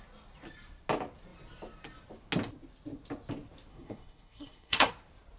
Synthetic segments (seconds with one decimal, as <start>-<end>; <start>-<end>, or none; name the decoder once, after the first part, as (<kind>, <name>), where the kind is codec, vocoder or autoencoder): 3.7-4.9 (codec, SNAC)